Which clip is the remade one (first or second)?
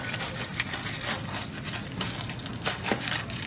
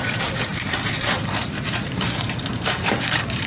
second